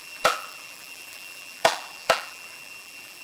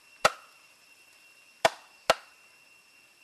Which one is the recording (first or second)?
second